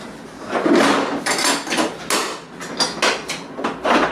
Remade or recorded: recorded